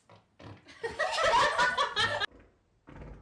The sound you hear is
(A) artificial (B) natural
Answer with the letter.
B